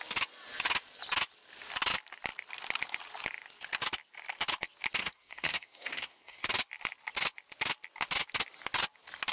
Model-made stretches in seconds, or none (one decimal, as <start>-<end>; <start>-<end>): 5.0-6.4